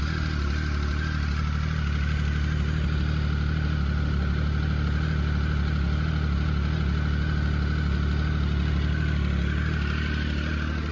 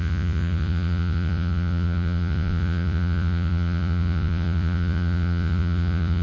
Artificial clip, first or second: second